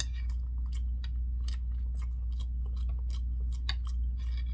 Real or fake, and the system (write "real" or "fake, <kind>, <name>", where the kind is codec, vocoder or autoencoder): real